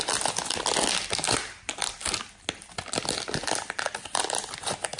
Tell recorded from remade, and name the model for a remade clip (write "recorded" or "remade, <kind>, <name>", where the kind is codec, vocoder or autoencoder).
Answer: recorded